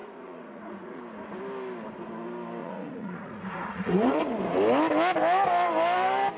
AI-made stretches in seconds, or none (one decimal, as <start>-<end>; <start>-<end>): 0.0-1.0; 2.6-4.2